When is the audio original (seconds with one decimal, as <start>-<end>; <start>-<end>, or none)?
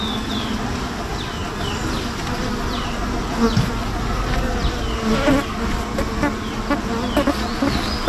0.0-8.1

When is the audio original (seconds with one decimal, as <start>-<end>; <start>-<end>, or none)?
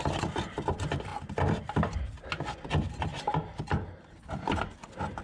0.0-1.1; 2.2-3.1; 4.2-5.2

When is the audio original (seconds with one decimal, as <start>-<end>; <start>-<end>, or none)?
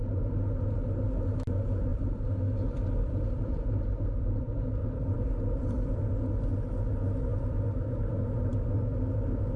0.0-1.9; 6.2-7.3; 7.9-8.5